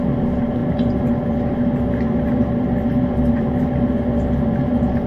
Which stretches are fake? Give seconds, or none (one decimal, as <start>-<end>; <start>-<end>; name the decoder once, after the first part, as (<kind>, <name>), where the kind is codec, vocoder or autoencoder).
none

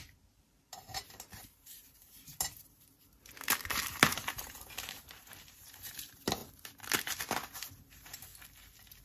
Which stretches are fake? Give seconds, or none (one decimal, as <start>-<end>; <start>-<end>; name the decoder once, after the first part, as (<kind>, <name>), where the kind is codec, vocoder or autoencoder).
0.0-6.4 (vocoder, BigVGAN v2); 7.7-8.3